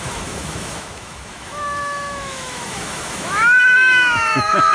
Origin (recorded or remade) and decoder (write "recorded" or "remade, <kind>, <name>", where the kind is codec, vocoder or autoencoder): remade, autoencoder, DAC-VAE